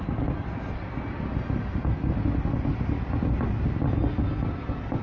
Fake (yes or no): no